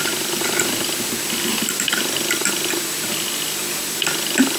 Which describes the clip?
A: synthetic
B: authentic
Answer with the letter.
B